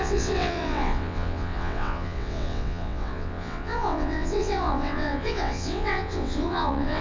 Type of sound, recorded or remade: remade